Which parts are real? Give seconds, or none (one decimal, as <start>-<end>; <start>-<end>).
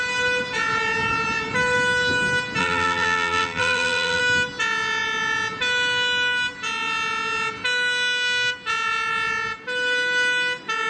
0.0-2.6; 4.2-10.9